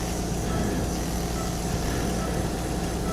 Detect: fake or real real